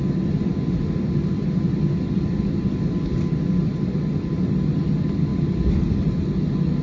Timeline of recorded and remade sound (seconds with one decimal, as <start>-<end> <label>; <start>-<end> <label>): 0.0-6.8 recorded